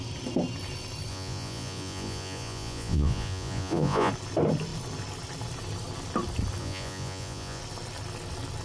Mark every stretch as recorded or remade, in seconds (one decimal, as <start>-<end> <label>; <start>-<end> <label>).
0.0-1.1 recorded; 1.1-4.1 remade; 4.1-6.6 recorded; 6.6-7.6 remade; 7.6-8.6 recorded